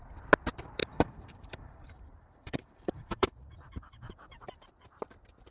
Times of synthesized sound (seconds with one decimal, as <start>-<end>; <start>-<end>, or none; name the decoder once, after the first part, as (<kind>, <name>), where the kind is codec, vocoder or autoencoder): 0.8-4.1 (vocoder, BigVGAN v2)